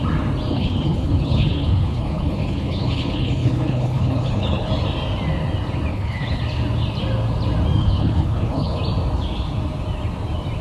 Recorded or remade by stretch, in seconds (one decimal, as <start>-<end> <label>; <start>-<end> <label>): 0.0-0.5 recorded; 0.5-4.7 remade; 4.7-5.9 recorded; 5.9-6.4 remade; 6.4-7.8 recorded; 7.8-8.8 remade; 8.8-10.6 recorded